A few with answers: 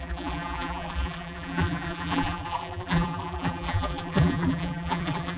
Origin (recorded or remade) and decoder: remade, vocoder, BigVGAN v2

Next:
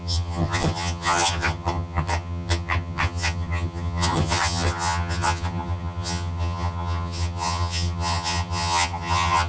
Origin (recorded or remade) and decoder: remade, vocoder, HiFi-GAN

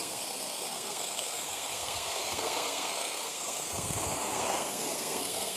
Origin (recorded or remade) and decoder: remade, codec, SNAC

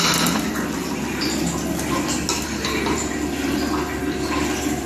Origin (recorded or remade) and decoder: recorded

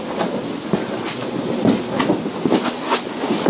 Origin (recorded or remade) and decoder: recorded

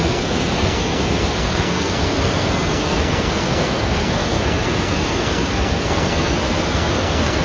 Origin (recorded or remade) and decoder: remade, codec, SNAC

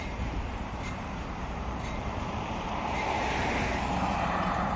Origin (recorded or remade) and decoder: remade, vocoder, BigVGAN v2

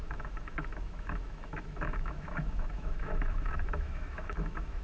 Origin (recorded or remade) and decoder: remade, autoencoder, DAC-VAE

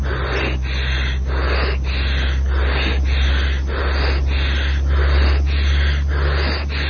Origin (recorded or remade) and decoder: recorded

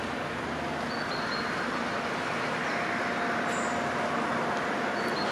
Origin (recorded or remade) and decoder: recorded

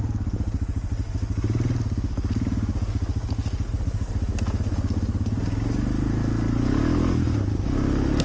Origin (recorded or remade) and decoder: recorded